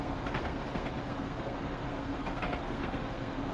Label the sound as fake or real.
fake